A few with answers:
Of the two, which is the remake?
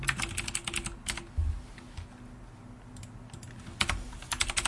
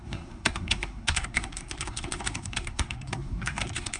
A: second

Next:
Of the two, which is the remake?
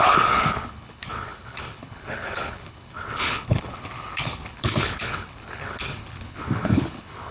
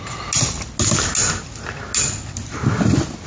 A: first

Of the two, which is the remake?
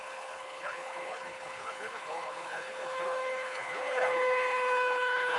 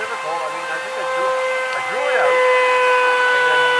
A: first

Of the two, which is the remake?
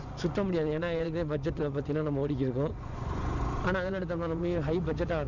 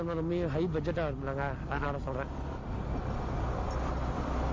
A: first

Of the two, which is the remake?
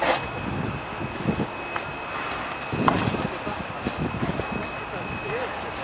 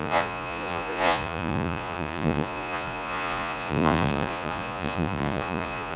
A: second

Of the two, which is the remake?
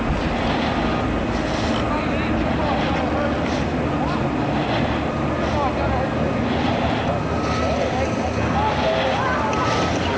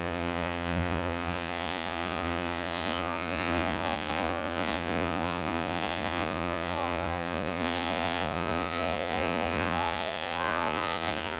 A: second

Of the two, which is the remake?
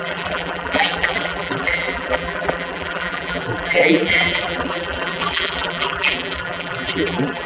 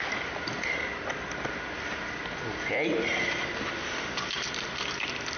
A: first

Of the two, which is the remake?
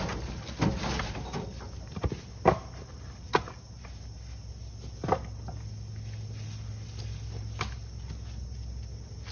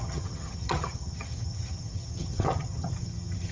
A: second